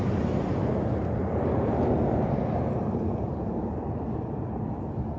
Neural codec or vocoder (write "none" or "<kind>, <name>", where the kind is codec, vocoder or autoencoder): none